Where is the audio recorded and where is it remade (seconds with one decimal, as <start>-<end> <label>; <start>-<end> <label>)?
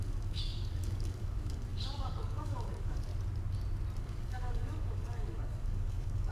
0.0-3.1 remade; 3.1-4.0 recorded; 4.0-6.3 remade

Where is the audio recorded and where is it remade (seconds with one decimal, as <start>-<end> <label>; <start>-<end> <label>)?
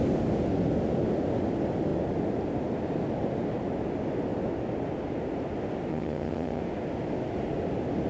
0.0-5.9 recorded; 5.9-6.6 remade; 6.6-8.1 recorded